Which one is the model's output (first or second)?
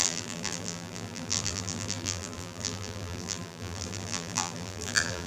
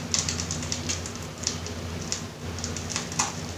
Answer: first